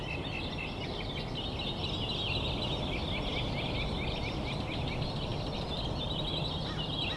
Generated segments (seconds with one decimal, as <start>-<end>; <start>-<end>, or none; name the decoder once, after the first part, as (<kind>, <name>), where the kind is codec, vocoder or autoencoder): none